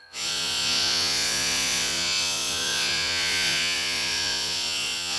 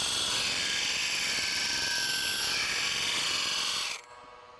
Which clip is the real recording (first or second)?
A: second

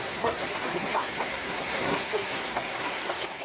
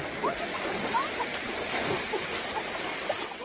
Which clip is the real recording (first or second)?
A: second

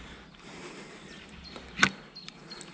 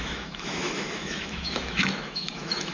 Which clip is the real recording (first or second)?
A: first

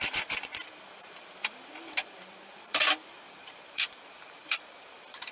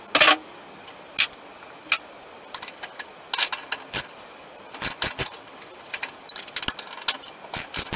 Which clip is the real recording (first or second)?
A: second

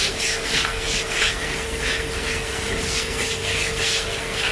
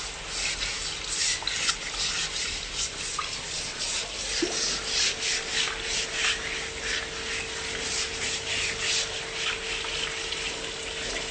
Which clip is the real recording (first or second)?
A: second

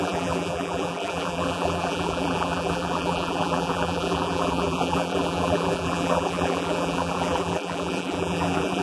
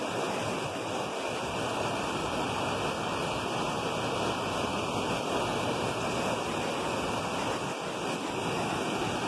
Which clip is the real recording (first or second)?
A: second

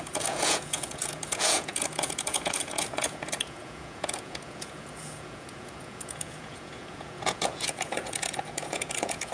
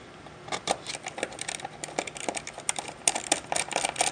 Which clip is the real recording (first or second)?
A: second